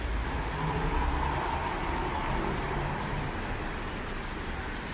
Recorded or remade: recorded